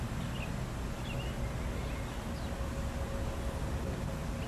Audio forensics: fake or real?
real